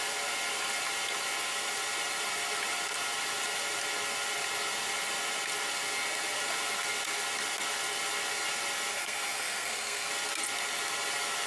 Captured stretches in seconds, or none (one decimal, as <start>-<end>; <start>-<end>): 0.0-8.9; 10.1-11.5